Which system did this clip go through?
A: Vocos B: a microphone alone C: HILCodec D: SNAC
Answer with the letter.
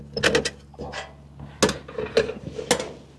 B